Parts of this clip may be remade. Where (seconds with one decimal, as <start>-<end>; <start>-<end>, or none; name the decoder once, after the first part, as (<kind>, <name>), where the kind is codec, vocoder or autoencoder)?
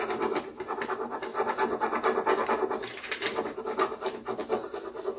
none